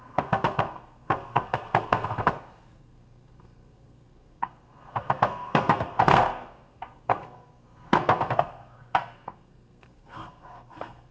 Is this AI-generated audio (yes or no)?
yes